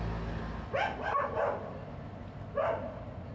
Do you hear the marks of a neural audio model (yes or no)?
no